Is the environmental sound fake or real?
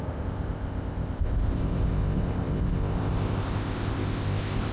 fake